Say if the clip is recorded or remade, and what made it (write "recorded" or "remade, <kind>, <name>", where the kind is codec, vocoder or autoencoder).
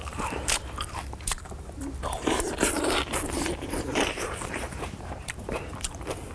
remade, vocoder, BigVGAN v2